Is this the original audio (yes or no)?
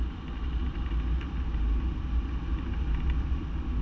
yes